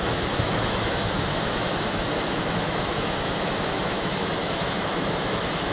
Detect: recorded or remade remade